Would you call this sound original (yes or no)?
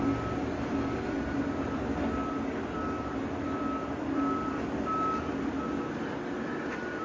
yes